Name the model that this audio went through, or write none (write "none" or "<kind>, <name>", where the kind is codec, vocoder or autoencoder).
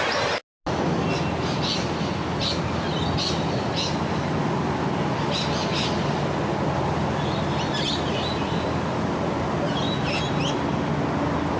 none